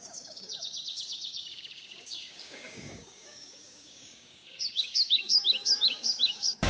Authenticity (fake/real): fake